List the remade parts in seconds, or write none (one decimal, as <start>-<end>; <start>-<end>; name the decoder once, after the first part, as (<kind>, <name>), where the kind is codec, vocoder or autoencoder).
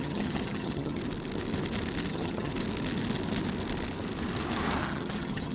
0.0-1.0 (vocoder, HiFi-GAN); 2.1-2.5; 4.8-5.5